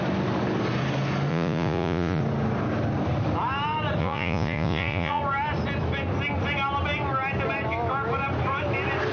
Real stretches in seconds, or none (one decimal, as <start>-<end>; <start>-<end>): 0.0-1.3; 2.2-4.0; 5.2-9.1